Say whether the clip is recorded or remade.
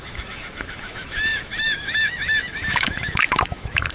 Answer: remade